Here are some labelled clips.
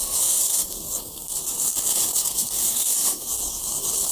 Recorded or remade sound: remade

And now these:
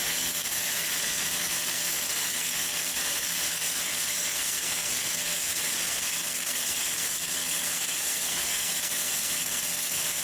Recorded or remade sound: remade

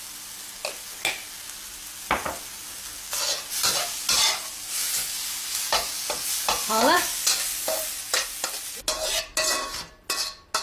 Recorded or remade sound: recorded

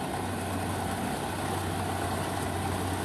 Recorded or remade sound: recorded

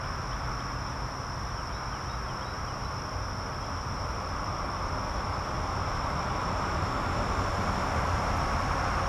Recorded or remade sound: recorded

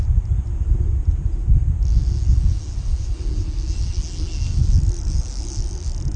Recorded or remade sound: recorded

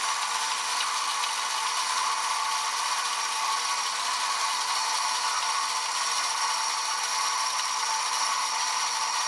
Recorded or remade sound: recorded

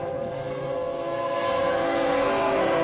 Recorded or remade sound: remade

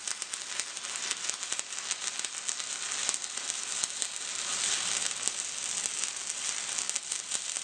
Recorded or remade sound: recorded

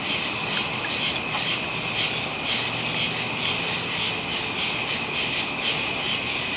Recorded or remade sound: recorded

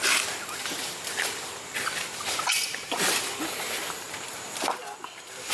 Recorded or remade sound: recorded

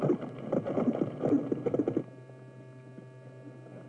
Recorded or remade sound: recorded